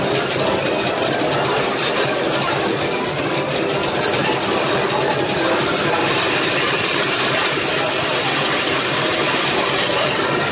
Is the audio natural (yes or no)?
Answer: yes